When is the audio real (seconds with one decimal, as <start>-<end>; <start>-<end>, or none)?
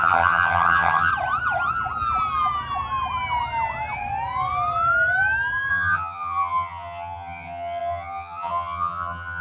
1.1-5.7